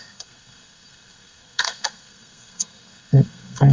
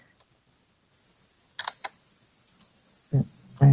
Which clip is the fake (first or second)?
first